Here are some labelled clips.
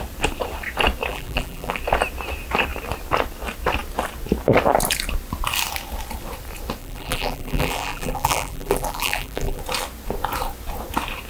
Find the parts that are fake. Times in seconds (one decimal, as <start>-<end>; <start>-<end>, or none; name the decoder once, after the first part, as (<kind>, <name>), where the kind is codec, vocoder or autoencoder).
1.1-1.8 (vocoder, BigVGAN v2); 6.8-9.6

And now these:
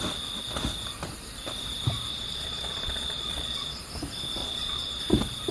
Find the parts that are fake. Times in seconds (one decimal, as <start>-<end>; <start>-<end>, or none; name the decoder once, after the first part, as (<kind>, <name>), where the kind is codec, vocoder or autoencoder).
2.1-3.8 (vocoder, Vocos); 4.4-5.0

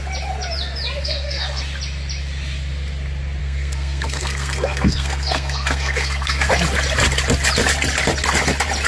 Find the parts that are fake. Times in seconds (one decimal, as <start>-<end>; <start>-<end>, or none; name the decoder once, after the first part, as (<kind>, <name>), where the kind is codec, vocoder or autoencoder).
1.0-1.6 (codec, SNAC); 3.4-6.5

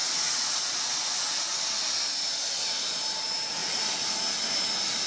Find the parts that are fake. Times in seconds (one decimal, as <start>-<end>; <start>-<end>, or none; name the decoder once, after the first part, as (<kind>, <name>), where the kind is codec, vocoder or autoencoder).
3.6-4.2 (vocoder, BigVGAN v2)

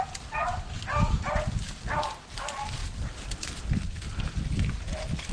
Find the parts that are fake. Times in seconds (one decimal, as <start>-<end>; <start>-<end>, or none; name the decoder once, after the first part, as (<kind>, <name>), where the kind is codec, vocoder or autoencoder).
none

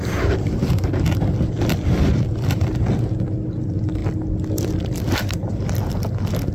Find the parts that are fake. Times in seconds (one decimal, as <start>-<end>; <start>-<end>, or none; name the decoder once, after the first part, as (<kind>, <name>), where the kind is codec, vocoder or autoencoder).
none

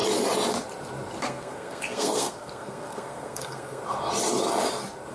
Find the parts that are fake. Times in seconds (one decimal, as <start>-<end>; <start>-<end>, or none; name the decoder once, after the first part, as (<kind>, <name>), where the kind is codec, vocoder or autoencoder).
1.2-3.8 (codec, SNAC)

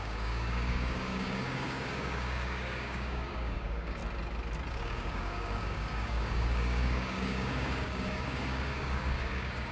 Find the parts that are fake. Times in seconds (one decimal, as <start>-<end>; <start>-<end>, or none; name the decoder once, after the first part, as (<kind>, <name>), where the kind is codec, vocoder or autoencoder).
0.0-4.0 (codec, DAC); 4.7-9.7